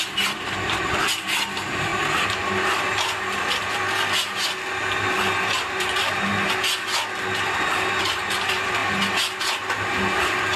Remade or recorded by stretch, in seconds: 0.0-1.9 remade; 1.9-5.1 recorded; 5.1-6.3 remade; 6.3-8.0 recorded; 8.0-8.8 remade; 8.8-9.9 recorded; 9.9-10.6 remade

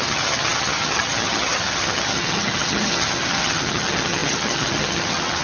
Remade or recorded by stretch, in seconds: 0.0-5.4 remade